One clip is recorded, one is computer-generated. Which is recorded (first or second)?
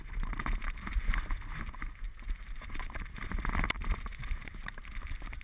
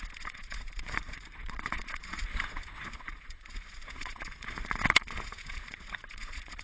first